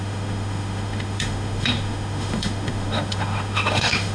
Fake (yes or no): yes